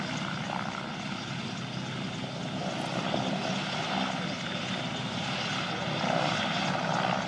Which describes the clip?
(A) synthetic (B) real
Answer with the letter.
B